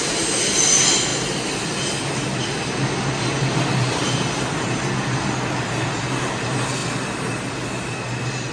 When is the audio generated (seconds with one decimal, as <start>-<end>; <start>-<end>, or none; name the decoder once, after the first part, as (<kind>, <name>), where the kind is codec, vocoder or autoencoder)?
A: none